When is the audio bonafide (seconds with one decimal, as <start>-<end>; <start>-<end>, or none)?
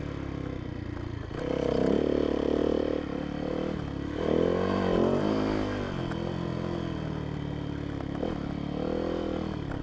0.0-9.8